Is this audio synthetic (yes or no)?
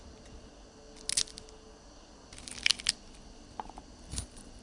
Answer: no